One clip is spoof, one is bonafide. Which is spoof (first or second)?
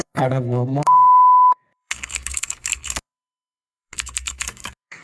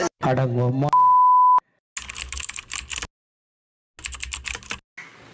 first